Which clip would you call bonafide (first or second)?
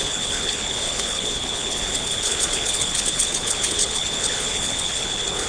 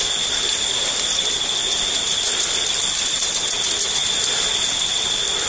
second